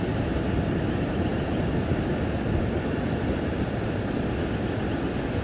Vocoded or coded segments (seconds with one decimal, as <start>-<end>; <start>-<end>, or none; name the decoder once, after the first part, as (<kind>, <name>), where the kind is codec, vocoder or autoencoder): 1.3-4.2 (vocoder, BigVGAN v2)